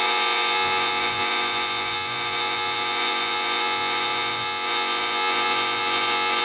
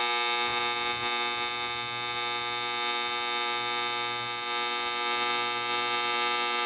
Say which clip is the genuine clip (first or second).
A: second